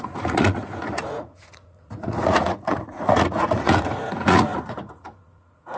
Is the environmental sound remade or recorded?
remade